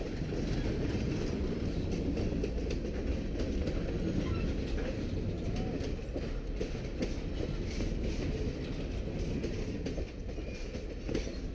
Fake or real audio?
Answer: real